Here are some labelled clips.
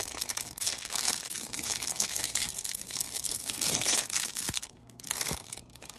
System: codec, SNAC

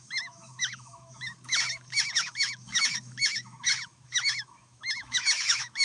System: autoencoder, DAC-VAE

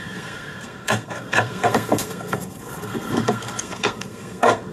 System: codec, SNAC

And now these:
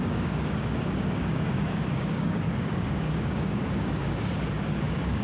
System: codec, DAC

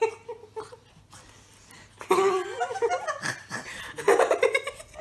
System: none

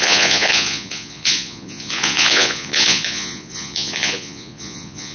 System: vocoder, Vocos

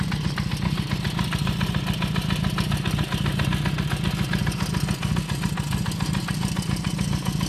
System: none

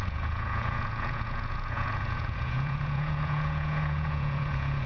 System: vocoder, Vocos